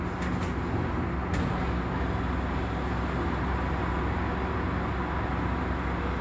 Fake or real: real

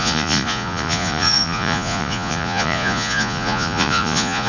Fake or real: fake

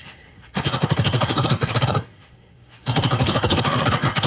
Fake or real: fake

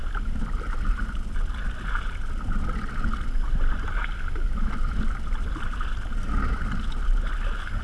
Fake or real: real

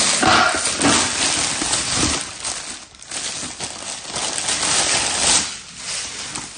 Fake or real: real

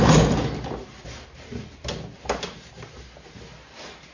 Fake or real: real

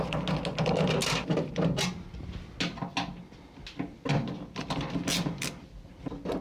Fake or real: real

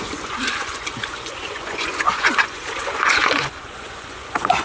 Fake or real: fake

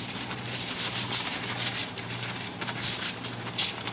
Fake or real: fake